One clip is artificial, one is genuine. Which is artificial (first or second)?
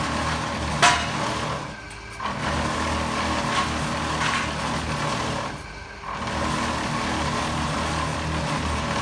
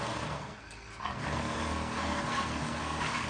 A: second